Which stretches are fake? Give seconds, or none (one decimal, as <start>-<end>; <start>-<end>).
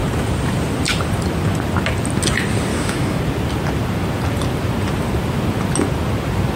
2.7-3.2